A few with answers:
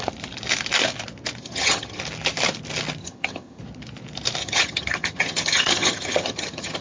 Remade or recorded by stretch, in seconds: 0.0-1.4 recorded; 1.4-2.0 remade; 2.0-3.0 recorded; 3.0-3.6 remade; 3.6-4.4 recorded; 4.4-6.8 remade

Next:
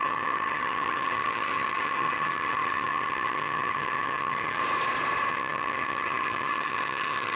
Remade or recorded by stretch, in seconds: 0.0-4.6 remade; 4.6-5.3 recorded; 5.3-7.4 remade

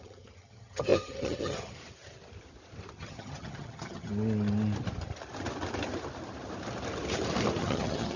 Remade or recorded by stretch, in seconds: 0.0-1.8 remade; 1.8-2.9 recorded; 2.9-4.1 remade; 4.1-7.6 recorded; 7.6-8.2 remade

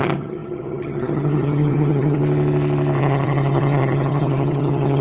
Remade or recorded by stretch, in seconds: 0.0-2.2 remade; 2.2-3.0 recorded; 3.0-5.0 remade

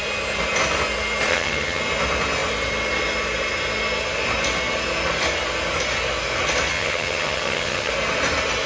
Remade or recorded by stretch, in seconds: 0.0-1.3 recorded; 1.3-1.8 remade; 1.8-6.7 recorded; 6.7-7.9 remade; 7.9-8.7 recorded